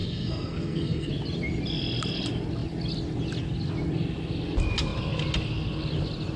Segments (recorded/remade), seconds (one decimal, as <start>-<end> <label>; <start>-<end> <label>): 0.0-1.1 remade; 1.1-6.4 recorded